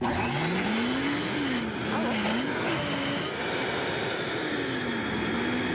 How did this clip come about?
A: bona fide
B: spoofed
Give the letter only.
A